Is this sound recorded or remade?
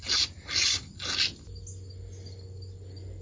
recorded